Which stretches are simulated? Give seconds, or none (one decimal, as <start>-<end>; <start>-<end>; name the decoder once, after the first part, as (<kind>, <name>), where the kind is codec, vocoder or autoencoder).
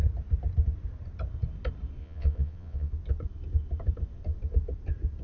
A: 2.0-2.9 (vocoder, Vocos)